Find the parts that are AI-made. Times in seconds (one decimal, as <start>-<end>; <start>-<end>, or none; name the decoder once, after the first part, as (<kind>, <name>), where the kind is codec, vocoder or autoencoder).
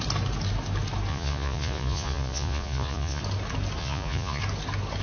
1.1-3.2 (vocoder, Vocos); 3.8-4.4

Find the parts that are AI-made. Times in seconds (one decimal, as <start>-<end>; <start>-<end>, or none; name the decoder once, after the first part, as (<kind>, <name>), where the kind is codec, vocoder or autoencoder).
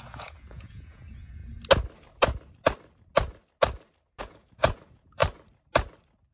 0.0-1.4 (vocoder, Vocos); 4.2-5.2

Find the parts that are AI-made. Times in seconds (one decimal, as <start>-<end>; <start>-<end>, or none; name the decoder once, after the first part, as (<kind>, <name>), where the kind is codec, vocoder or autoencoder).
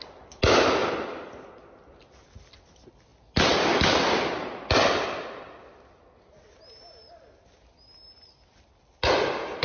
none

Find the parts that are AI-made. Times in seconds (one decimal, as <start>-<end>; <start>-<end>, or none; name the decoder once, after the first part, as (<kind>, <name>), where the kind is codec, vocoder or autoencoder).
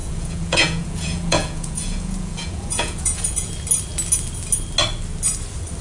0.0-3.5 (vocoder, Vocos)